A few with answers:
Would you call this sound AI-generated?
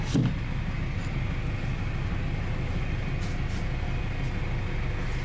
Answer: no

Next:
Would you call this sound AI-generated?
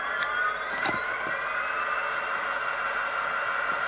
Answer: no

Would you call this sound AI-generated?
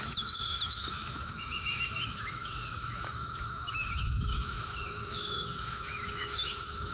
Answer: yes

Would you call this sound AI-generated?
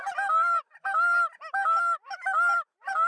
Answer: no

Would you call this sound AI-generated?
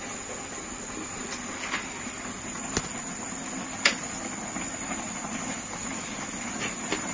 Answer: no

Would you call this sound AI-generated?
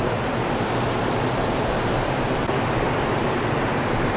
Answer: no